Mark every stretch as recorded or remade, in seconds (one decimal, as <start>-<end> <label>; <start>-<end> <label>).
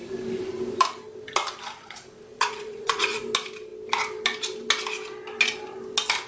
0.0-2.3 recorded; 2.3-3.2 remade; 3.2-6.3 recorded